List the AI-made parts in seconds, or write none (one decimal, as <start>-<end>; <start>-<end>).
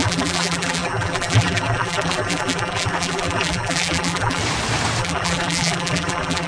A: 0.0-4.4; 5.0-6.5